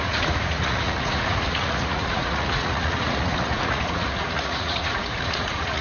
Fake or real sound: fake